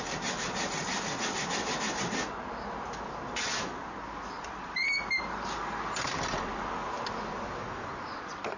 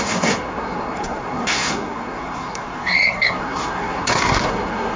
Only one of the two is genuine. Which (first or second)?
first